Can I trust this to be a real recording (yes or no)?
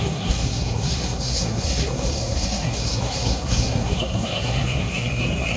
no